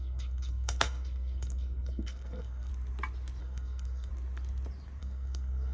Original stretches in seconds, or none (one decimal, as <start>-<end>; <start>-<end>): 2.7-3.4; 4.1-5.0